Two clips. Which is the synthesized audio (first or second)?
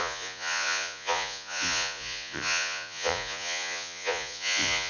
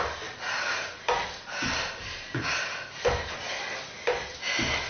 first